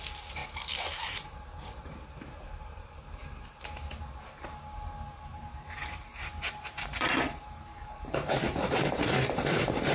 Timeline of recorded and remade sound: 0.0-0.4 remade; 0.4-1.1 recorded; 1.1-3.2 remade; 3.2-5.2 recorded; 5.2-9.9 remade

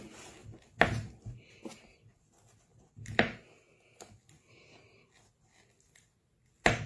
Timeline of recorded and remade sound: 0.0-6.9 recorded